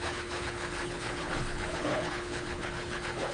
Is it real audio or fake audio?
fake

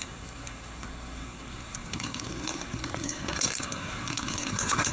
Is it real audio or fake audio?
fake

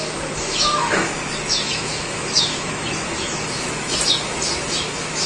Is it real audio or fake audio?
fake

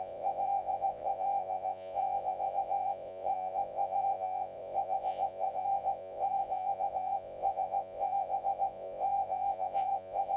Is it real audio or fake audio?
fake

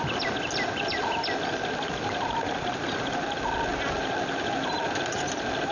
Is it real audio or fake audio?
real